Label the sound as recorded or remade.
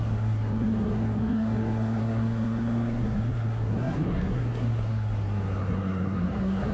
remade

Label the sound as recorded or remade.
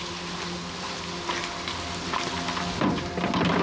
recorded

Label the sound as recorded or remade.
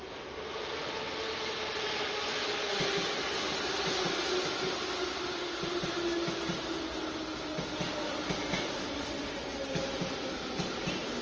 recorded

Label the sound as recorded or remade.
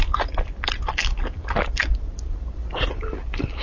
recorded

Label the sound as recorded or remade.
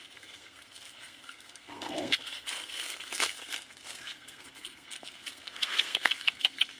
remade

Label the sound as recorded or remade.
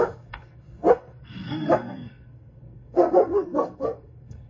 remade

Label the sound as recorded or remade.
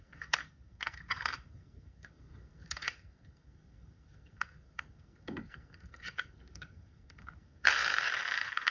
remade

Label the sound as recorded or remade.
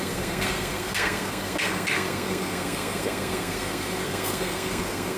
remade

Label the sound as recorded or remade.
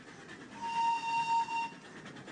recorded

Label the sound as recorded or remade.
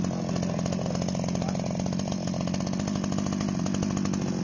recorded